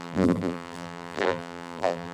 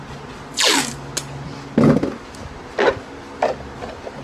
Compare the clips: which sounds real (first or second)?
second